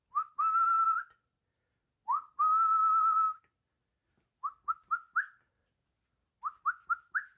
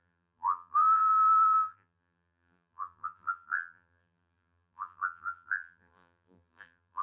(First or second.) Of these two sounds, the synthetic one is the second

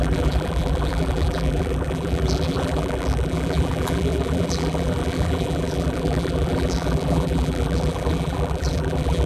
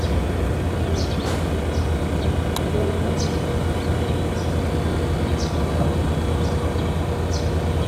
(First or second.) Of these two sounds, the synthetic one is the first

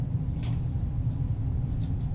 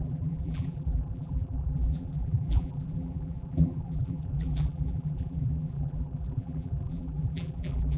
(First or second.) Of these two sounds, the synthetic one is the second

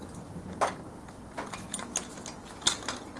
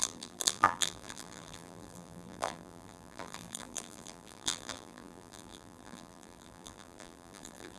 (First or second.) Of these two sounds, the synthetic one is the second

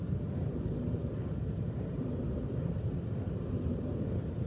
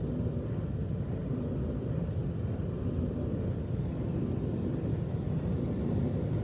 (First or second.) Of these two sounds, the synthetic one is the first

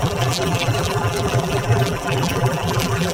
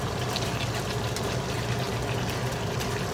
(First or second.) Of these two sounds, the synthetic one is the first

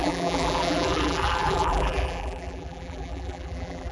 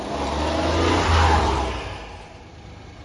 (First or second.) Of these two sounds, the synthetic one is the first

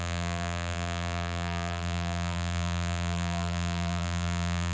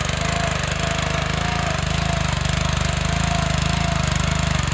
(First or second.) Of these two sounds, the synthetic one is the first